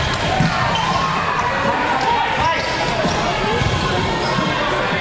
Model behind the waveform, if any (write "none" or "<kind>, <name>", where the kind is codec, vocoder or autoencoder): none